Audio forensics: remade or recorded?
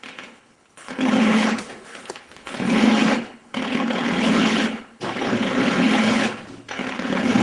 remade